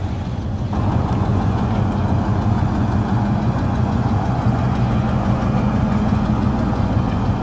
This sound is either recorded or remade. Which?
remade